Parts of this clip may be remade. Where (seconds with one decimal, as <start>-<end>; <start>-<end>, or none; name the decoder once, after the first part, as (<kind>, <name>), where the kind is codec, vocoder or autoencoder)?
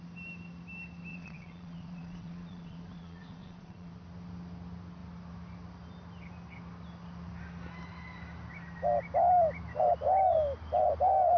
1.1-3.9 (vocoder, Vocos)